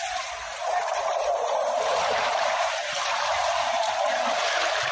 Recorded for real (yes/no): no